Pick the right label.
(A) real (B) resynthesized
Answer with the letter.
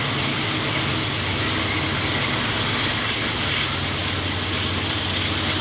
A